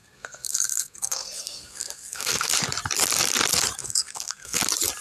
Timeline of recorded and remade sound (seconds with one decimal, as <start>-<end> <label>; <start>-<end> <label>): 0.0-2.5 remade; 2.5-3.8 recorded; 3.8-4.6 remade; 4.6-5.0 recorded